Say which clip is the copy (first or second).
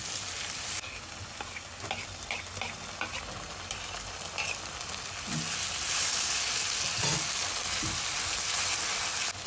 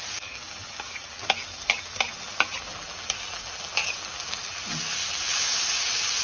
second